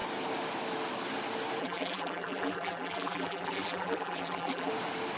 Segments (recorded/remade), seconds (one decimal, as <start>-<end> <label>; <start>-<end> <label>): 0.0-1.6 recorded; 1.6-4.7 remade; 4.7-5.2 recorded